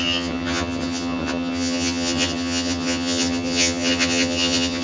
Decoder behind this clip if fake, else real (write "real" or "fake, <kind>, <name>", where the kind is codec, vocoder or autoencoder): fake, vocoder, HiFi-GAN